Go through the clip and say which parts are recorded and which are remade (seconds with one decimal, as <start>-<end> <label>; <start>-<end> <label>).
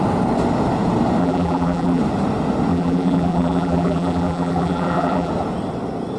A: 0.0-1.2 recorded; 1.2-2.0 remade; 2.0-2.7 recorded; 2.7-5.3 remade; 5.3-6.2 recorded